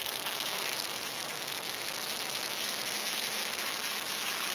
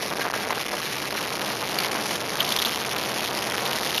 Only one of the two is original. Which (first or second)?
second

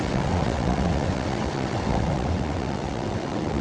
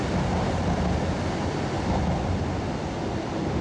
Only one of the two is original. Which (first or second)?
second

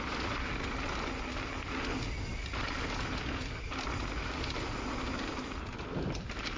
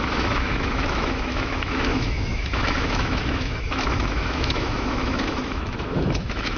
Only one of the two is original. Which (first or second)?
first